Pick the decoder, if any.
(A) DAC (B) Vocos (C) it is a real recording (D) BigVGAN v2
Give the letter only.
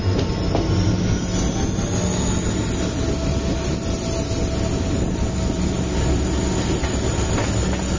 C